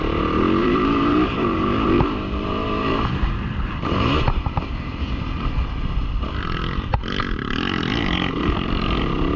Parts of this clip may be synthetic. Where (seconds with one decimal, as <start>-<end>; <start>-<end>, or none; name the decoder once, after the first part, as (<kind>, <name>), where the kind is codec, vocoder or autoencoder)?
0.6-5.5 (vocoder, BigVGAN v2)